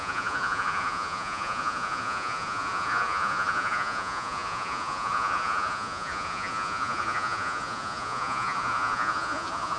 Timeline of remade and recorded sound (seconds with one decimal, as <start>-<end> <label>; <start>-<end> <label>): 0.0-9.8 remade